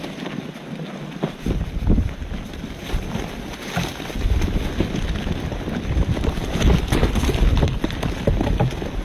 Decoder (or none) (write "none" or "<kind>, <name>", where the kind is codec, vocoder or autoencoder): none